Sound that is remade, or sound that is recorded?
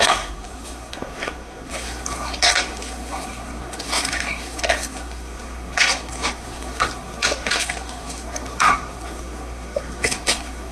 remade